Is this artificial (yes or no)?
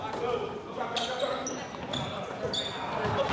no